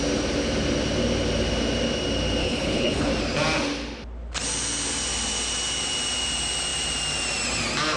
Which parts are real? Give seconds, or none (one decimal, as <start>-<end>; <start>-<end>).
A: 0.0-2.4; 3.1-8.0